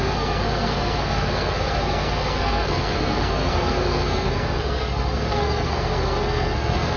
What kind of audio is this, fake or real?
fake